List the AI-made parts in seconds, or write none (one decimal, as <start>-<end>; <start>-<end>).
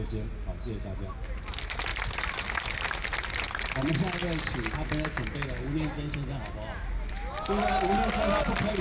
none